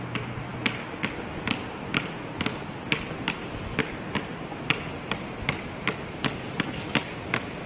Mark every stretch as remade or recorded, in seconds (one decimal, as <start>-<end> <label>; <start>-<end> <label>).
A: 0.0-7.7 recorded